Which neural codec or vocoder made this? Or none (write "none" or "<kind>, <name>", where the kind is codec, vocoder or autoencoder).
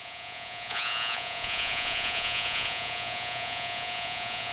vocoder, Vocos